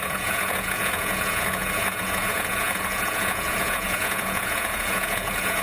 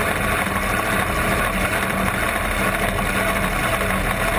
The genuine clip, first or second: second